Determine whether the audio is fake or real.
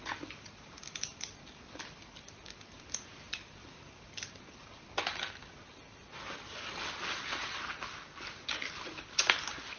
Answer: real